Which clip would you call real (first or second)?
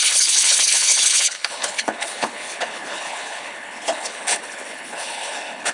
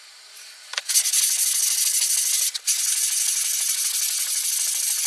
second